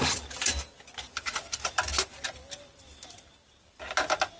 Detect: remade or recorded recorded